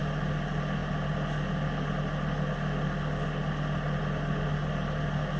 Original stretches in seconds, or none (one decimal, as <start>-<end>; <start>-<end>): 0.0-5.4